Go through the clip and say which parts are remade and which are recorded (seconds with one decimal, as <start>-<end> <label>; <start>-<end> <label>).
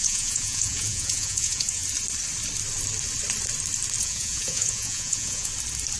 0.0-1.8 remade; 1.8-4.0 recorded; 4.0-5.5 remade; 5.5-6.0 recorded